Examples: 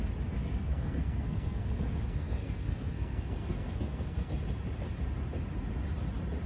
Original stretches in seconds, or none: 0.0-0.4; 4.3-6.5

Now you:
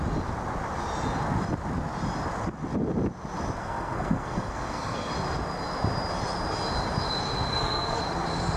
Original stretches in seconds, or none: 0.0-3.6; 5.1-7.5; 8.0-8.6